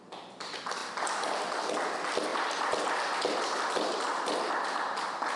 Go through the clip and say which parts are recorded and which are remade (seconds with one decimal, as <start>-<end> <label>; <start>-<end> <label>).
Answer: 0.0-0.8 recorded; 0.8-1.6 remade; 1.6-2.3 recorded; 2.3-4.5 remade; 4.5-5.4 recorded

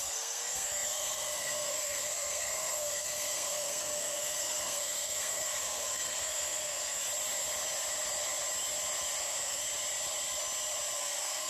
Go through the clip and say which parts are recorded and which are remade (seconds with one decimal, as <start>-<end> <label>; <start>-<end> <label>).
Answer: 0.0-7.0 remade; 7.0-9.2 recorded; 9.2-9.6 remade; 9.6-11.0 recorded; 11.0-11.5 remade